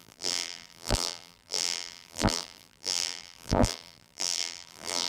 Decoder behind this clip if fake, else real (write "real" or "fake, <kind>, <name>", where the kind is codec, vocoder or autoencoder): fake, vocoder, BigVGAN v2